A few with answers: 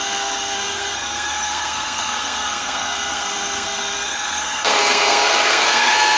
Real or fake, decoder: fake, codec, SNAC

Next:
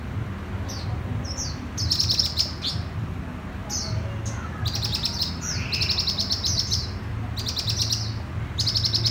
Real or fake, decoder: real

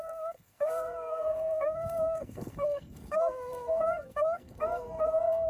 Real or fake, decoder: fake, codec, SNAC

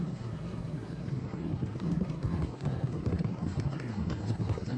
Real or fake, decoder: fake, codec, SNAC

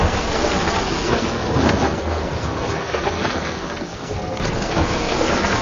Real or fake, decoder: fake, codec, SNAC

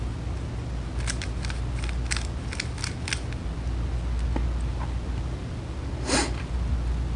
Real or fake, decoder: real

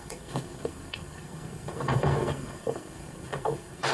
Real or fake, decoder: fake, codec, SNAC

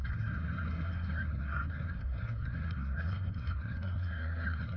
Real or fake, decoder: fake, codec, SNAC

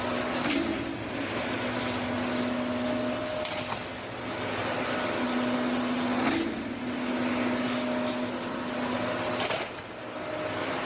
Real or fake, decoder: real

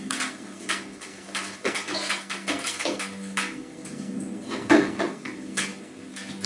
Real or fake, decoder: fake, codec, SNAC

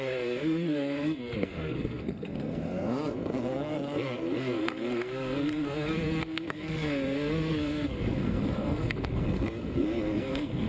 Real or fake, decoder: fake, codec, SNAC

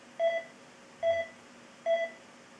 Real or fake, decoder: real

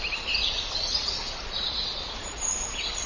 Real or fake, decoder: real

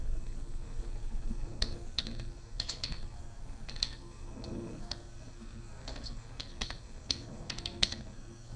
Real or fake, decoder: fake, codec, SNAC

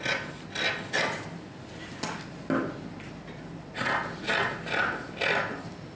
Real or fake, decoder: real